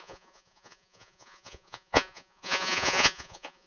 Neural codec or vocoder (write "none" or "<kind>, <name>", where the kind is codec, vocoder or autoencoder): vocoder, Vocos